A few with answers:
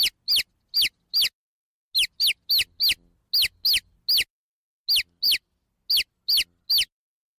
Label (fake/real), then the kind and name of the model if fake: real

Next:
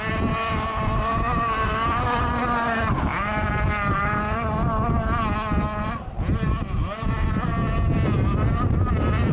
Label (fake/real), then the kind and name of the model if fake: real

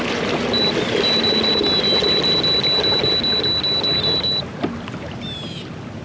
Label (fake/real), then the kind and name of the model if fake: real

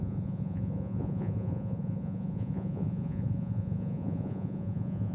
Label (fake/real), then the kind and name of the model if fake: fake, vocoder, Vocos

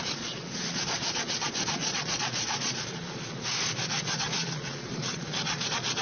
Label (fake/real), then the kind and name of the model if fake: fake, vocoder, Vocos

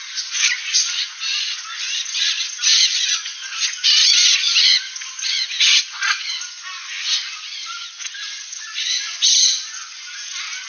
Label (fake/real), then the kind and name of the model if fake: fake, vocoder, Vocos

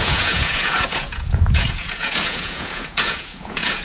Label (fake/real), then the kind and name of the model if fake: fake, vocoder, Vocos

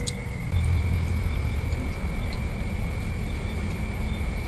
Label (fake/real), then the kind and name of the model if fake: real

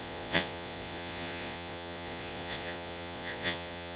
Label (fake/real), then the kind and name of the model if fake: fake, vocoder, Vocos